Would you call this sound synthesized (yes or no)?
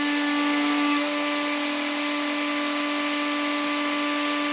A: no